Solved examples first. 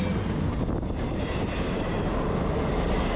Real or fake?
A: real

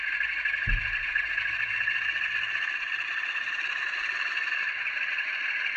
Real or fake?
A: real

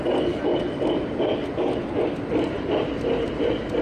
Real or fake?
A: real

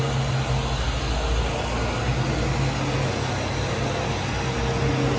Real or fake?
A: real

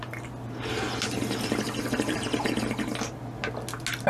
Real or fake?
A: real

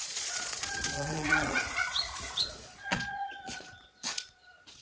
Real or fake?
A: fake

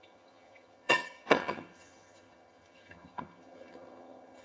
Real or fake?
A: fake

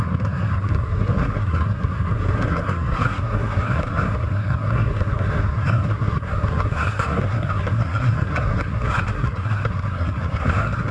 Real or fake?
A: fake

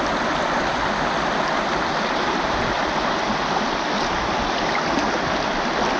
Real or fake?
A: real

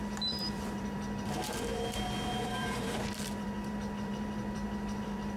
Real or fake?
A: fake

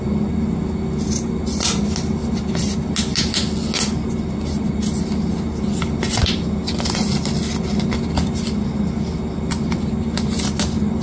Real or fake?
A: real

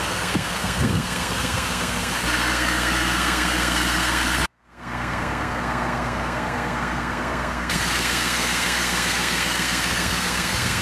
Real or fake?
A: fake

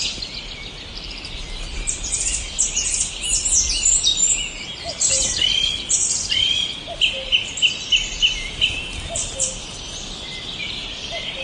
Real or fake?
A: fake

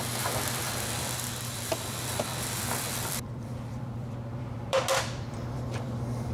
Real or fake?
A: fake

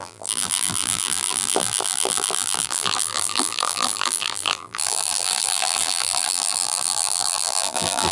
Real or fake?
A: fake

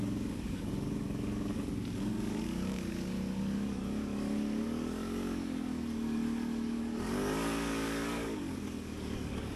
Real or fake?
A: fake